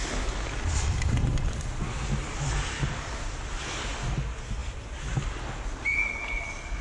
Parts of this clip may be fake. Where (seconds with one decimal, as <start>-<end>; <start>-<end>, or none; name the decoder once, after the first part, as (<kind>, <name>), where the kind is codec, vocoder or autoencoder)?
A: none